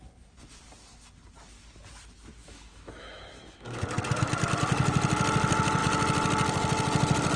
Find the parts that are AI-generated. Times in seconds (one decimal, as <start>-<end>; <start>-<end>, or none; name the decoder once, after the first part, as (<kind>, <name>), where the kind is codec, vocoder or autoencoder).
2.4-3.8 (autoencoder, DAC-VAE)